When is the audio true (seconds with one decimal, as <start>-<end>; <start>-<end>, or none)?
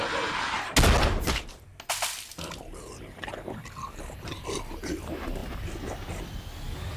0.0-7.0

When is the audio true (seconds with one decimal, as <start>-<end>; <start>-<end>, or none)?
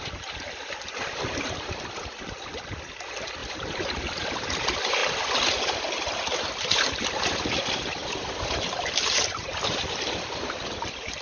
5.0-6.7; 8.0-9.2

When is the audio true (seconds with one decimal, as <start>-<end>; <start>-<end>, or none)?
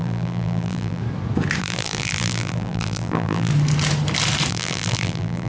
1.0-1.6; 3.5-4.5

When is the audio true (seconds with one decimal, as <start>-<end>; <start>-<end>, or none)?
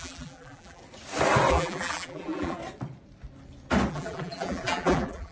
0.8-1.5; 2.6-3.9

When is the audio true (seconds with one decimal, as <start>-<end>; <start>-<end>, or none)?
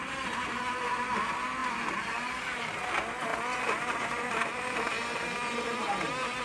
0.0-1.6; 2.8-6.4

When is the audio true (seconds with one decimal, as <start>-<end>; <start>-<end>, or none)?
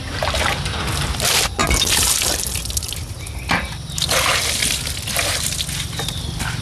0.0-6.6